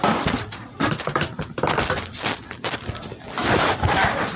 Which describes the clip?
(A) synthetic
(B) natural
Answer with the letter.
A